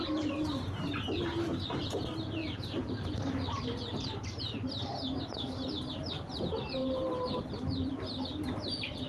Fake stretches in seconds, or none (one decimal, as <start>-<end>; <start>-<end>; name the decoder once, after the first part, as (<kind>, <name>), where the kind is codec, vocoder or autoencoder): 2.4-3.6 (vocoder, BigVGAN v2)